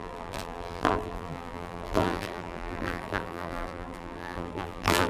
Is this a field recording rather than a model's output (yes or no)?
no